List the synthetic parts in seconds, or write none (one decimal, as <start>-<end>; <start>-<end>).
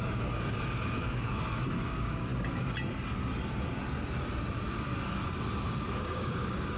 0.0-2.3; 5.9-6.8